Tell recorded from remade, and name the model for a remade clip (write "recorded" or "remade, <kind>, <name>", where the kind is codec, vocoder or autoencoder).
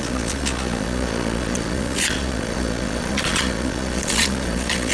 remade, vocoder, Vocos